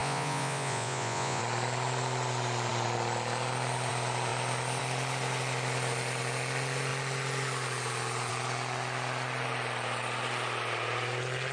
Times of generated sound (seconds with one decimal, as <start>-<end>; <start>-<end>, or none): 0.0-1.4